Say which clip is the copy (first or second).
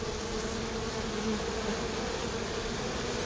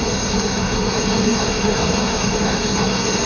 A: second